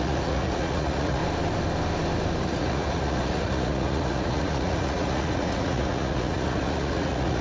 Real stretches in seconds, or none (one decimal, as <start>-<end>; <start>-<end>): 1.2-2.4